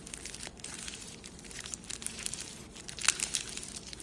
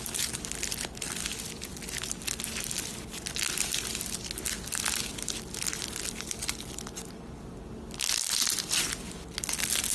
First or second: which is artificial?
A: first